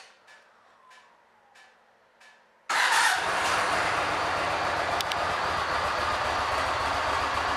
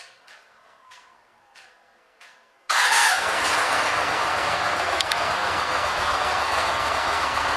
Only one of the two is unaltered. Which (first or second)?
first